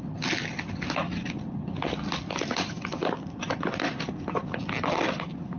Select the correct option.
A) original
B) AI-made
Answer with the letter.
A